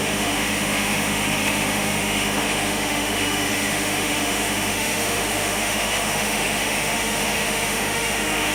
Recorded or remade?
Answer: remade